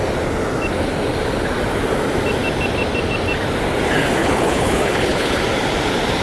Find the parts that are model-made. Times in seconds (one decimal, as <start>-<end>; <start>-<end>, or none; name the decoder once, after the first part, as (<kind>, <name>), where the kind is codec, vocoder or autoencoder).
4.2-5.4 (codec, HILCodec)